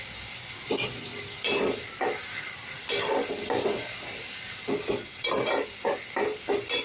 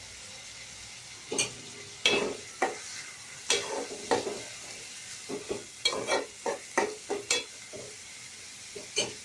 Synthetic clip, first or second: first